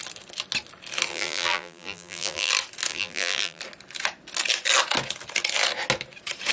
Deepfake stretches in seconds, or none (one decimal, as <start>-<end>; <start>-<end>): 1.1-2.5; 2.9-3.6